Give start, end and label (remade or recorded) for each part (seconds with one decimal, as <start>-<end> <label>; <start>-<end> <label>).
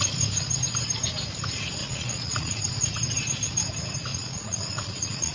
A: 0.0-1.8 recorded; 1.8-2.6 remade; 2.6-4.1 recorded; 4.1-5.3 remade